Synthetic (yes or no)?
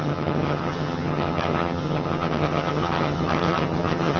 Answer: yes